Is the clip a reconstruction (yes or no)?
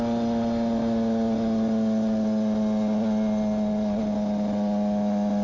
no